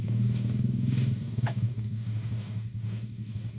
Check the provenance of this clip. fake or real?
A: fake